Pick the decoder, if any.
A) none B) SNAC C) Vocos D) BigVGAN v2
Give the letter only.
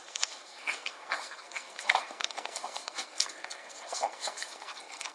B